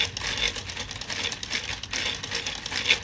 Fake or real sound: real